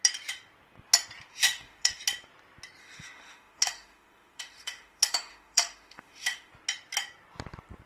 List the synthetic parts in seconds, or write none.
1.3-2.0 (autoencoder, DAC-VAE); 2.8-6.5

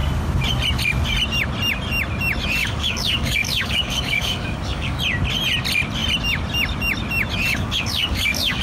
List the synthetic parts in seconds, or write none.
2.6-5.0 (codec, DAC); 7.5-8.6

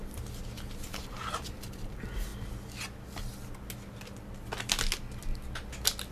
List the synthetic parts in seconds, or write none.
0.8-2.3 (vocoder, BigVGAN v2)

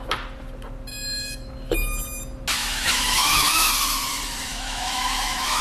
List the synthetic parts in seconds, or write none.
0.9-1.5 (autoencoder, DAC-VAE); 2.6-3.7; 4.5-5.6

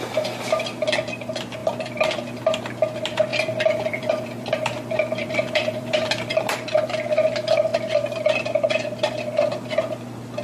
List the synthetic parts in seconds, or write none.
1.6-2.6 (vocoder, BigVGAN v2); 3.3-6.4

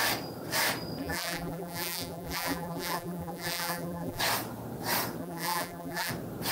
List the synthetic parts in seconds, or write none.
1.0-4.2 (vocoder, BigVGAN v2); 5.2-6.1